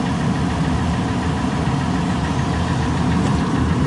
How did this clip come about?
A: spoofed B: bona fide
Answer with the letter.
B